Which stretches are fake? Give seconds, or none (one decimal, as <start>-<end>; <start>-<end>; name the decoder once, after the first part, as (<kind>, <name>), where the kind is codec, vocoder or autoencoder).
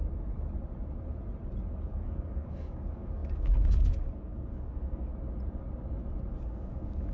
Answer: 1.8-5.1 (codec, DAC); 6.4-7.1